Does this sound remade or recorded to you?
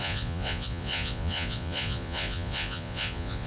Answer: remade